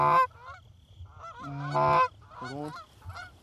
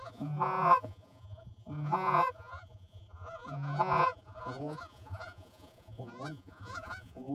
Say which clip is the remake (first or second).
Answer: second